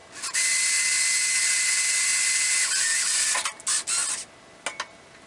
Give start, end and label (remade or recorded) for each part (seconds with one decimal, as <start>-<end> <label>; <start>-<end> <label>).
0.0-5.3 recorded